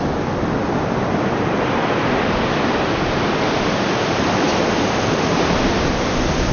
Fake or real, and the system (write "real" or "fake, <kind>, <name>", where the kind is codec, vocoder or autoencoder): real